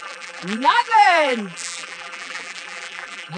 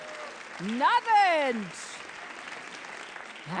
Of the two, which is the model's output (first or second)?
first